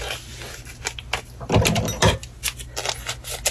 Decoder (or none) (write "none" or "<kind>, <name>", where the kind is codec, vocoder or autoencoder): none